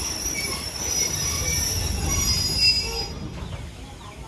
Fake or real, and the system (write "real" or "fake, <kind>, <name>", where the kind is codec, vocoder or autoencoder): real